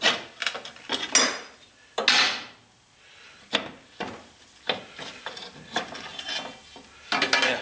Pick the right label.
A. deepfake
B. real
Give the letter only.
B